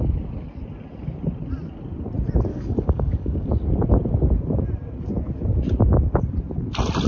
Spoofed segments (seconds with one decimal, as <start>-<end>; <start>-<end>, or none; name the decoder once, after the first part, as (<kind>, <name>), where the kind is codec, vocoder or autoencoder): 2.5-3.5 (codec, DAC)